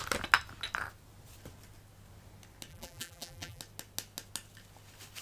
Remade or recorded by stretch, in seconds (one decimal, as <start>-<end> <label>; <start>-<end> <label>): 0.0-2.7 recorded; 2.7-3.6 remade; 3.6-5.2 recorded